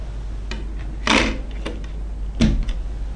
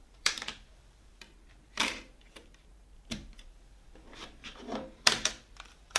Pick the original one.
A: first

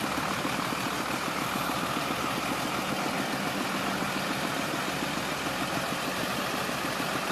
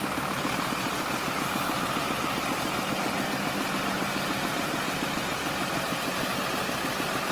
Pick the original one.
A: second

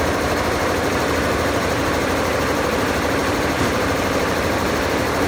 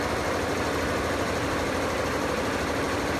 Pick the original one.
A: second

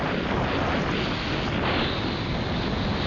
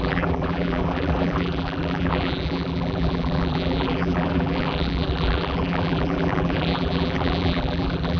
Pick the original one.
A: first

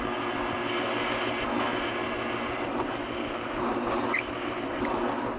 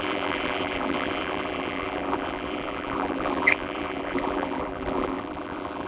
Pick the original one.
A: first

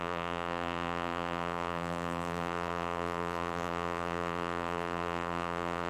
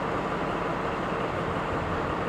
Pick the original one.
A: second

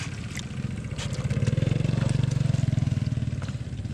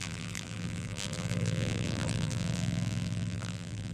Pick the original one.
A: first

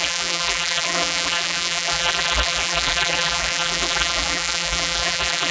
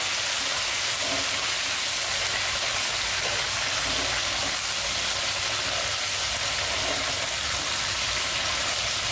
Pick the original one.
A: second